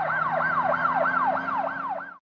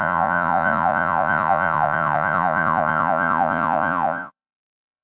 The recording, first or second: first